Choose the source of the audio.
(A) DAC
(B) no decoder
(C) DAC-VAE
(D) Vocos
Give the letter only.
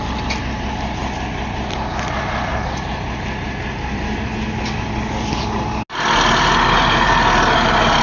B